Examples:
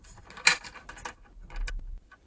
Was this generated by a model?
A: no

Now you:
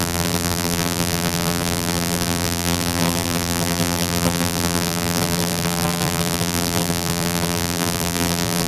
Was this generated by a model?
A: yes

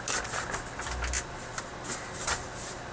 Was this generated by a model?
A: no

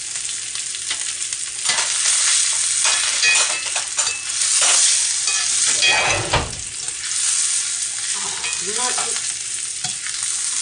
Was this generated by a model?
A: no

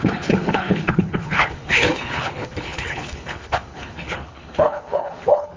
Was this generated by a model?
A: yes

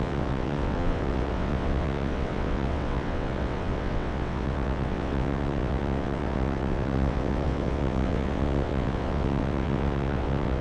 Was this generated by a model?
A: yes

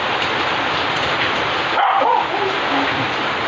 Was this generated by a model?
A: no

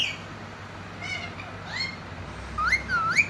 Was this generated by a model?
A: no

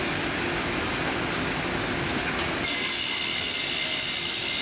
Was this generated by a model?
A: no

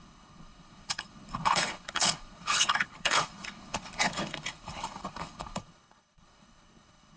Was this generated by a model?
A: yes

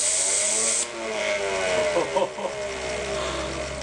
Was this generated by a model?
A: no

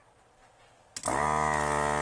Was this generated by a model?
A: no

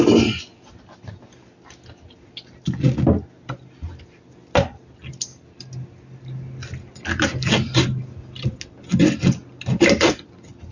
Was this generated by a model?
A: no